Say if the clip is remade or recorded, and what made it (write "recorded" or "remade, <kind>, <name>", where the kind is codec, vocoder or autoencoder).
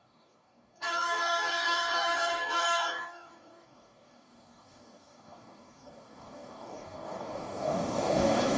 remade, codec, DAC